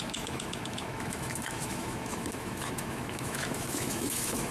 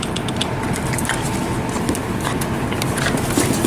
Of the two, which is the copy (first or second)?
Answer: first